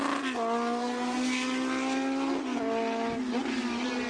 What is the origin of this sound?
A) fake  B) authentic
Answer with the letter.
B